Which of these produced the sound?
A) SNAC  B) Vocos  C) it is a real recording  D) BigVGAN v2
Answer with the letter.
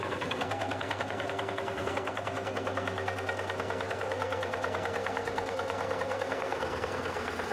A